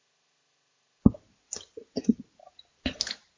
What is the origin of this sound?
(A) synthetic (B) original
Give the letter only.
B